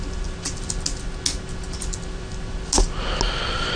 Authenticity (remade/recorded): recorded